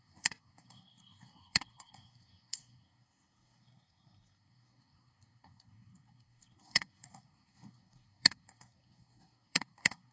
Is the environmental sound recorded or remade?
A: remade